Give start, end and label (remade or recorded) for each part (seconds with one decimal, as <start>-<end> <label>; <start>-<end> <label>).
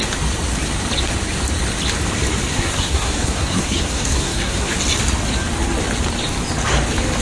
0.0-2.5 recorded; 2.5-4.7 remade; 4.7-7.2 recorded